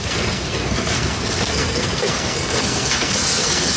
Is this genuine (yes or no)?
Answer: no